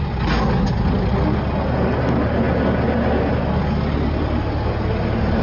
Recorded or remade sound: recorded